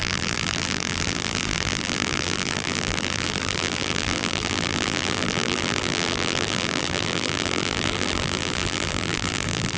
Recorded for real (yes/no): no